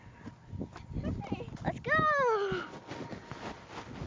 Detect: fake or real real